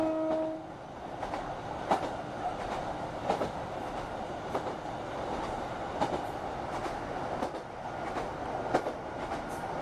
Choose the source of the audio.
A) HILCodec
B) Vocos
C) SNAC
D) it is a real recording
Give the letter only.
D